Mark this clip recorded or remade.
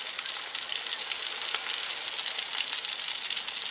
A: recorded